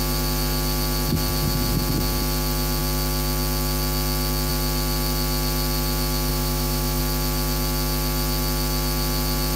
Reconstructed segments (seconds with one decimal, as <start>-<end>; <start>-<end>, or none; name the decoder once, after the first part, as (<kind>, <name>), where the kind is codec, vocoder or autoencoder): 6.3-7.0 (autoencoder, DAC-VAE)